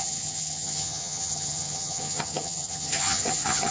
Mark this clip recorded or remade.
remade